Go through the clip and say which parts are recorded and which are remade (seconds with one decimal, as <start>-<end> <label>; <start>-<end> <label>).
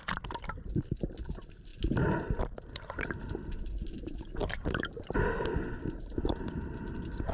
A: 0.0-4.4 recorded; 4.4-7.3 remade